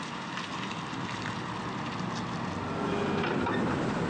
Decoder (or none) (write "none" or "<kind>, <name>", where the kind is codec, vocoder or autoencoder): none